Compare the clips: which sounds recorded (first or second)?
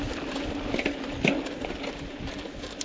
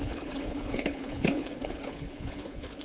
first